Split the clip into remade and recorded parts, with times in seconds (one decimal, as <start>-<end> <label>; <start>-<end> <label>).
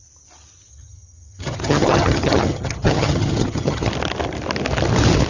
0.0-0.7 recorded; 0.7-3.9 remade; 3.9-5.3 recorded